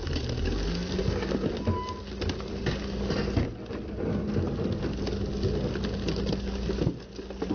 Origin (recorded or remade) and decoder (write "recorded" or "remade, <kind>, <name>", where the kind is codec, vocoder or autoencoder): recorded